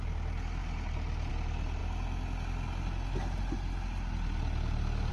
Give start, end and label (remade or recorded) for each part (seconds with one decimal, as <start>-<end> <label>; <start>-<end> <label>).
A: 0.0-5.1 recorded